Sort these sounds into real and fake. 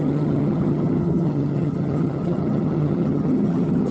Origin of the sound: fake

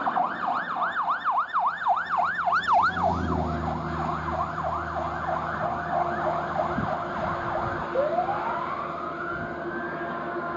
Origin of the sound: real